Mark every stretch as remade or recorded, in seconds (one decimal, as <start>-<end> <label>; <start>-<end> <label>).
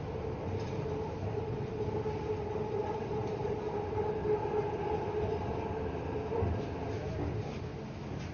0.0-8.3 recorded